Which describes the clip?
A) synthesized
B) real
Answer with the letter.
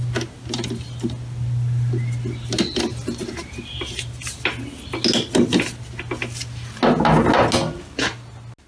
B